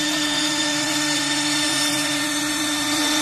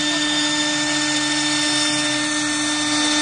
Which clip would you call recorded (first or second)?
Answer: second